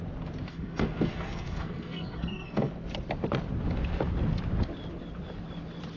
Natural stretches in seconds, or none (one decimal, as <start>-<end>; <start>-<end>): 0.0-0.5; 2.7-6.0